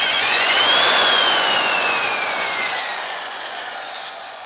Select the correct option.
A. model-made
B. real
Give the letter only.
A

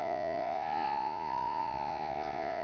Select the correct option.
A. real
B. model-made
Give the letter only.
B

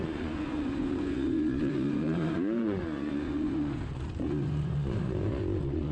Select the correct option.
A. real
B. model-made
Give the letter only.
B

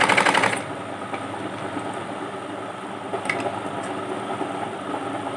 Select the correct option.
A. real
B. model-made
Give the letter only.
A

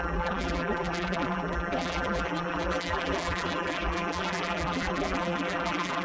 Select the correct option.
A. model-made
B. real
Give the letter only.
A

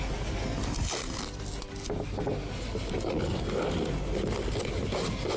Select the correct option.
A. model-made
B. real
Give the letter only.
B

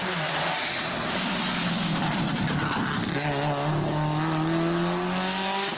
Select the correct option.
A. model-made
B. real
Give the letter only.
B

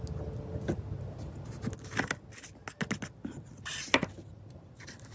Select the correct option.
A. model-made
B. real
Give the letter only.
B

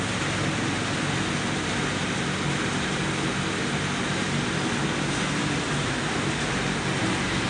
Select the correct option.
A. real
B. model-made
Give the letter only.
A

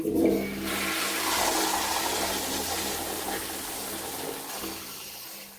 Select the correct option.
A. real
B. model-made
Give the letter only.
A